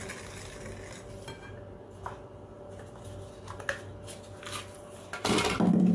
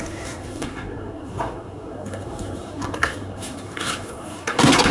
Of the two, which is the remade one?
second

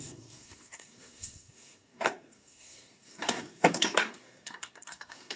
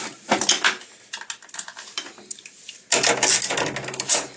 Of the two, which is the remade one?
first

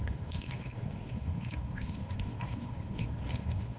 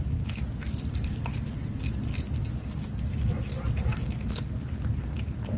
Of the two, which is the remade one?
first